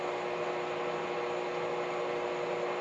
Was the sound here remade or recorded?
recorded